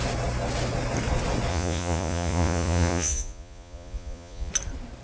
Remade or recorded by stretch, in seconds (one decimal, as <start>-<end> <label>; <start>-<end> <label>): 0.0-1.5 recorded; 1.5-4.5 remade; 4.5-5.0 recorded